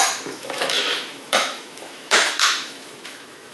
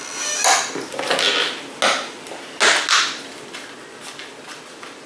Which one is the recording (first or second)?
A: second